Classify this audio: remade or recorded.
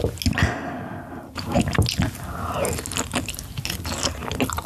recorded